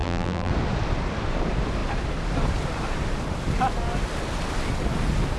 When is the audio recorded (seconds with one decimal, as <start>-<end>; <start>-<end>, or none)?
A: 0.5-5.4